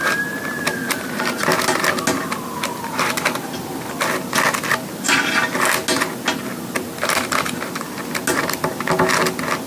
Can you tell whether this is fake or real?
real